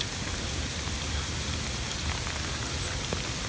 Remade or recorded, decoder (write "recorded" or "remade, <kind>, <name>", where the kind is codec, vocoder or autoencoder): remade, vocoder, BigVGAN v2